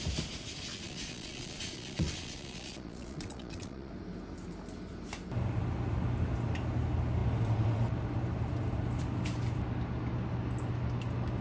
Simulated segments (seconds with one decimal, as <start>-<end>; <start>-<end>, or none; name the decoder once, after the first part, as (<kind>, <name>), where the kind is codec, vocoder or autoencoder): 0.7-3.9 (vocoder, Vocos)